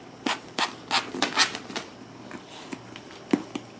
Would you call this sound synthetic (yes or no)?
no